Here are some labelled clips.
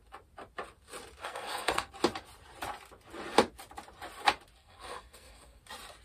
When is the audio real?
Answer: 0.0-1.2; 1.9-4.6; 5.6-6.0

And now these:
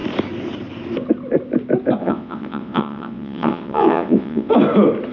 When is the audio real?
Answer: 0.0-2.0; 4.5-5.1

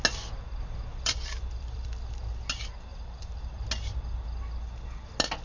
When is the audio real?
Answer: 0.0-0.9; 2.1-2.9; 3.4-5.4